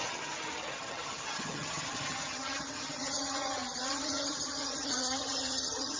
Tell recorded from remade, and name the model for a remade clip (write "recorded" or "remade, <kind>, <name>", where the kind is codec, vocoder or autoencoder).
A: remade, vocoder, HiFi-GAN